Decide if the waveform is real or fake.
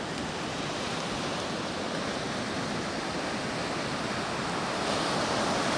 real